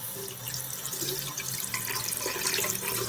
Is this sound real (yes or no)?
yes